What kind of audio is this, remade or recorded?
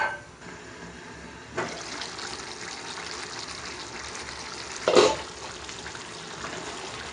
recorded